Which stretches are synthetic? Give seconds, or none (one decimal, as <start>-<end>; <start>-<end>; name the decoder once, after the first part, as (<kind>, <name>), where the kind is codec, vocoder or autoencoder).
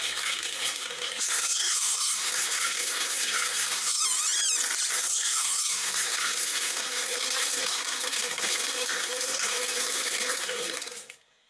0.0-4.0 (codec, SNAC); 4.9-11.5